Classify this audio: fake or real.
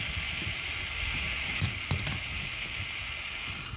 real